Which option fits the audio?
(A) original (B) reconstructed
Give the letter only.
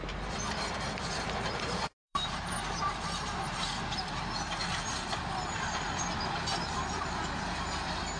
B